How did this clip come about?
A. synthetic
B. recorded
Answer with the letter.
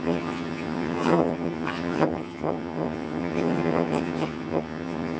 A